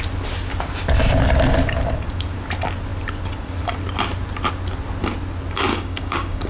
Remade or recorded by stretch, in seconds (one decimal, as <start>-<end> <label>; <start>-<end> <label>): 0.0-5.7 recorded; 5.7-6.5 remade